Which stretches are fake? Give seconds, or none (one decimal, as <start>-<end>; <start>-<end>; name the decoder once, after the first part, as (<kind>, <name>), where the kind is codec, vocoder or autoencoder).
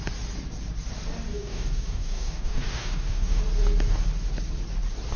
1.3-3.4 (codec, DAC)